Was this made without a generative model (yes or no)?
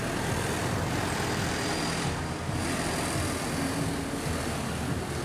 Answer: yes